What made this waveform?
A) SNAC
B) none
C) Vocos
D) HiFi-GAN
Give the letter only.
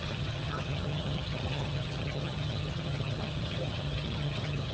D